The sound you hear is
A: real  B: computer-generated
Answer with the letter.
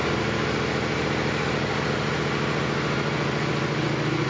A